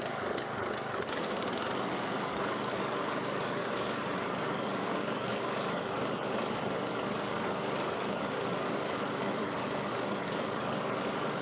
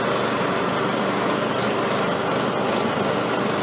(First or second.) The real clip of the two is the second